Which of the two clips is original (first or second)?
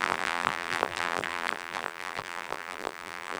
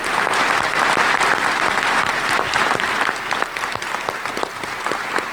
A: second